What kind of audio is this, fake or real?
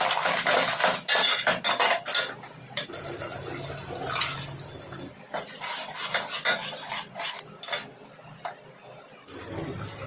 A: real